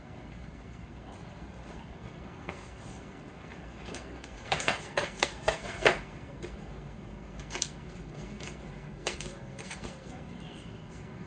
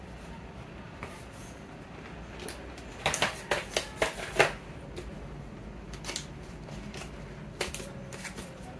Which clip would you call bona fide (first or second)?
second